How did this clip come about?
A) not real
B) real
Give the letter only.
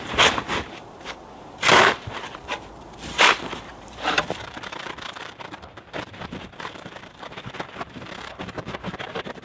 A